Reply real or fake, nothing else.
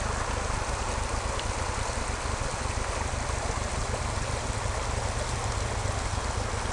real